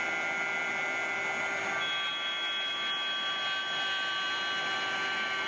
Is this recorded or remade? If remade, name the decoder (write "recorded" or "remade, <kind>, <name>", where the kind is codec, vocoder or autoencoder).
recorded